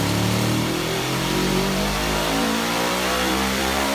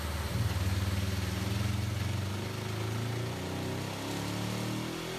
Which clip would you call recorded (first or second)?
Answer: second